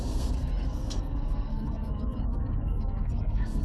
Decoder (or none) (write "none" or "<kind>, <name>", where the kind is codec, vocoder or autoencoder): codec, SNAC